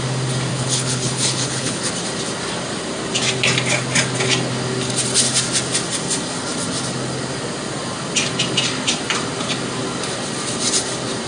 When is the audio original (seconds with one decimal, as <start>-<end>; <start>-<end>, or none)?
0.0-0.5; 1.9-11.3